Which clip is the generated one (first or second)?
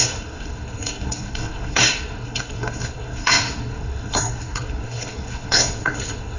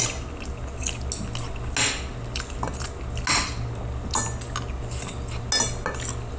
first